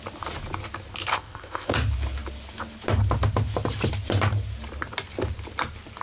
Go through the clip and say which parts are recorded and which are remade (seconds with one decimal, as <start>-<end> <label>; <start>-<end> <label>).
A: 0.0-1.1 recorded; 1.1-1.7 remade; 1.7-6.0 recorded